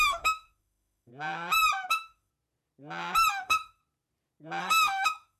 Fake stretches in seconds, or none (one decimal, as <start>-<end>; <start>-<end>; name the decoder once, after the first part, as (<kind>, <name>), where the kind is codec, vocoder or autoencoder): 0.0-1.1 (autoencoder, DAC-VAE); 1.9-2.3; 3.3-3.8; 4.6-5.4